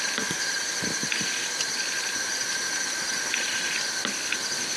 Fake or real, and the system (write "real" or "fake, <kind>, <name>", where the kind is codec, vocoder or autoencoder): real